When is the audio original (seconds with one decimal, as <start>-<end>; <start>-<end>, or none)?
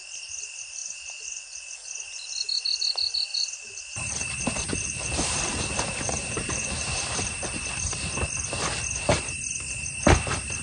0.0-3.3; 7.7-10.6